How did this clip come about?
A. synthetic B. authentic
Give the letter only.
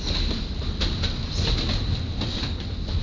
B